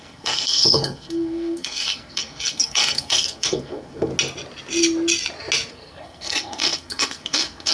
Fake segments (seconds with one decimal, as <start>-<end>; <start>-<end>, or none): 0.0-4.1; 5.7-7.7